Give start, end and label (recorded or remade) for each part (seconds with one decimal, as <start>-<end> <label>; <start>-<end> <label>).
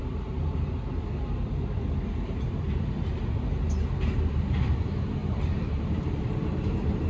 0.0-4.3 recorded; 4.3-7.1 remade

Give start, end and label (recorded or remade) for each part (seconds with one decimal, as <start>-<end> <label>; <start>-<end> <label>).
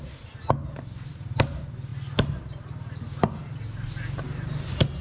0.0-5.0 recorded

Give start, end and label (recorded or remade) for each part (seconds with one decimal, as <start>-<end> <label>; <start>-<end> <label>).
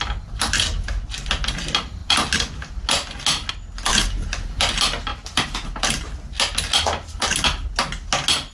0.0-3.9 recorded; 3.9-4.6 remade; 4.6-5.1 recorded; 5.1-6.1 remade; 6.1-8.5 recorded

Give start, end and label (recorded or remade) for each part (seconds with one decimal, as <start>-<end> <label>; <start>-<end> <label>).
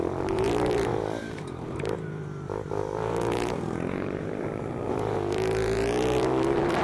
0.0-6.8 remade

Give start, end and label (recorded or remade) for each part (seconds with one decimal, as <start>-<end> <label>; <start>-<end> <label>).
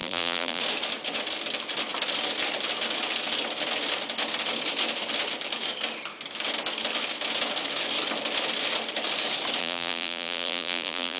0.0-0.6 remade; 0.6-9.6 recorded; 9.6-11.2 remade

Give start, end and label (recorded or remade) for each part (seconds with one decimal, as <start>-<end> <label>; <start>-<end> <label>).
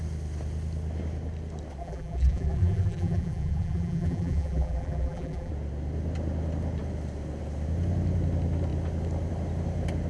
0.0-1.8 recorded; 1.8-5.5 remade; 5.5-10.1 recorded